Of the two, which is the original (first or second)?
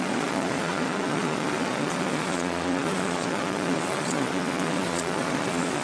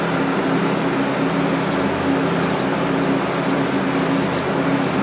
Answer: second